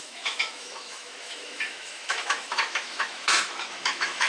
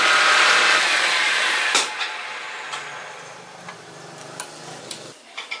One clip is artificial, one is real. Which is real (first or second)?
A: second